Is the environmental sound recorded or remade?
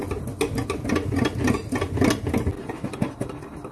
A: recorded